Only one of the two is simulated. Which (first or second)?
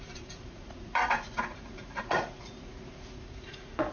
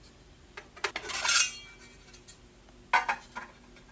first